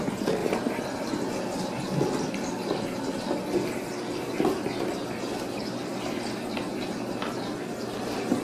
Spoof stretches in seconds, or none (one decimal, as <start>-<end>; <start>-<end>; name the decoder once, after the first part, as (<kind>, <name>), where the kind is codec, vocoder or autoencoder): 0.4-1.3 (vocoder, BigVGAN v2)